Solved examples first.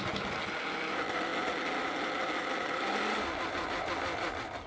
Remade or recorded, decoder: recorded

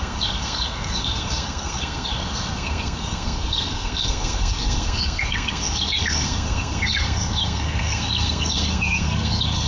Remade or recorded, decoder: remade, codec, SNAC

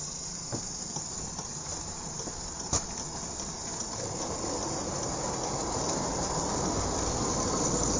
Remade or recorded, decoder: recorded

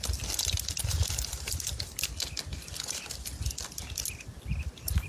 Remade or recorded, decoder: recorded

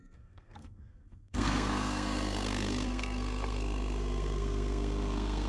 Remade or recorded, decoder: remade, codec, SNAC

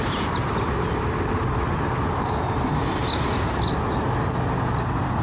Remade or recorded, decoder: recorded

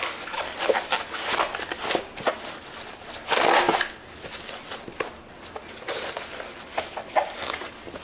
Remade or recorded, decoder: recorded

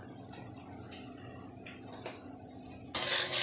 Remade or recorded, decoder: recorded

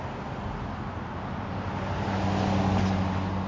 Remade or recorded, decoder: recorded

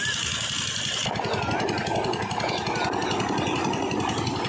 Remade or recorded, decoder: recorded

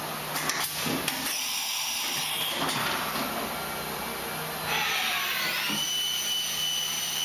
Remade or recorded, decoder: recorded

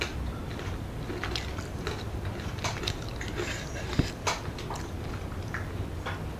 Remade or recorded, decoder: recorded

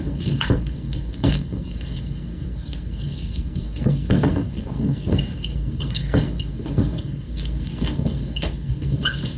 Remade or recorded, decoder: remade, codec, SNAC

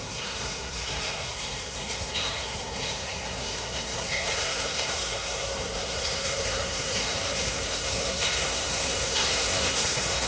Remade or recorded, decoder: remade, codec, SNAC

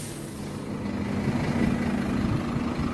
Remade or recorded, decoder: recorded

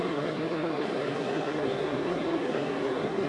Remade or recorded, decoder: remade, codec, SNAC